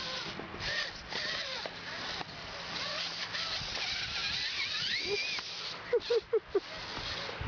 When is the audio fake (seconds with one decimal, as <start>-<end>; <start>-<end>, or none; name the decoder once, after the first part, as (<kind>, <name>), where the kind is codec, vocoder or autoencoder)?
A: none